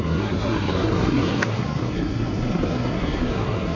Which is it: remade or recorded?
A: remade